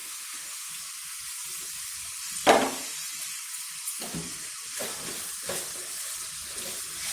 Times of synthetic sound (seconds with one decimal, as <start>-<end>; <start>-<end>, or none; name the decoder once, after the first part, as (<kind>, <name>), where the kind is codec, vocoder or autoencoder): 0.0-0.7 (autoencoder, DAC-VAE)